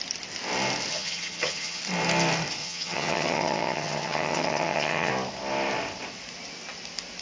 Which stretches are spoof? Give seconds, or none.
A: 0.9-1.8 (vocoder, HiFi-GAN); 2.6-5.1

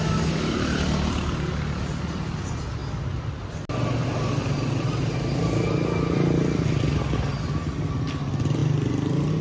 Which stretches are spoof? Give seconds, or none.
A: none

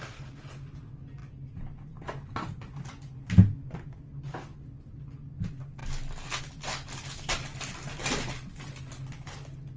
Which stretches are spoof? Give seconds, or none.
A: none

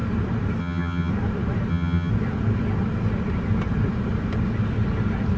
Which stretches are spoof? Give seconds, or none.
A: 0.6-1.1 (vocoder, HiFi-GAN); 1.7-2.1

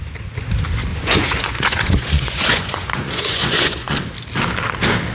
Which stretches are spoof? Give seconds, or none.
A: 0.9-4.0 (vocoder, Vocos)

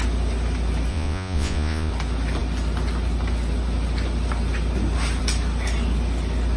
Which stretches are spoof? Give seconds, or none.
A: 0.9-1.9 (vocoder, Vocos)

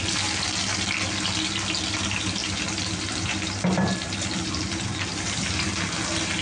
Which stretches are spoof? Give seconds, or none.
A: 2.4-5.4 (vocoder, BigVGAN v2)